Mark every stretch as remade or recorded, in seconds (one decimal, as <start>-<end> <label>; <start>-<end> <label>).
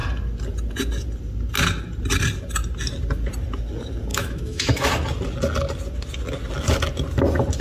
0.0-4.1 recorded; 4.1-4.9 remade; 4.9-7.6 recorded